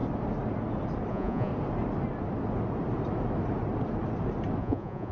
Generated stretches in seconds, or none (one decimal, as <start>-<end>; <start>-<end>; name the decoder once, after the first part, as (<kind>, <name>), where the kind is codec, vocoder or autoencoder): 1.1-1.5 (vocoder, Vocos); 4.6-5.1